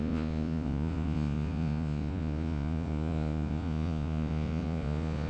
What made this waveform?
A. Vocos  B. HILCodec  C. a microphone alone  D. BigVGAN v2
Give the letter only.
A